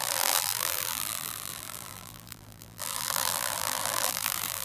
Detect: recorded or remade remade